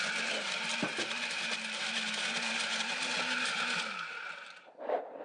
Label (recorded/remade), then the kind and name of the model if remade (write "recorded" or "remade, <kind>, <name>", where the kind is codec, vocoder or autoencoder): recorded